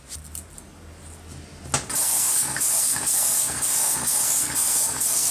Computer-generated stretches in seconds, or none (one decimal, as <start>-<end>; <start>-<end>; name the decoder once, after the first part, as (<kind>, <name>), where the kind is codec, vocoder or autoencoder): 2.0-5.3 (codec, SNAC)